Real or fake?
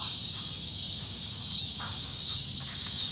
fake